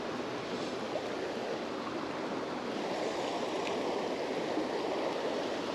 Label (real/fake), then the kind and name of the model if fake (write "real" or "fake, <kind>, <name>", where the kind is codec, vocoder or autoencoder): real